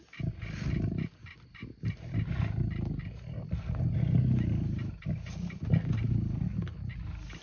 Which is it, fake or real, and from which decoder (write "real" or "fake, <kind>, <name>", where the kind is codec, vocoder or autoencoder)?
real